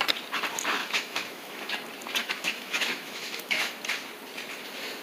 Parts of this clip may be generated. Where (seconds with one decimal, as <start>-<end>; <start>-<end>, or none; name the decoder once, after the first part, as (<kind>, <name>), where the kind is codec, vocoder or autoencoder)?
0.8-1.7 (autoencoder, DAC-VAE); 2.2-3.7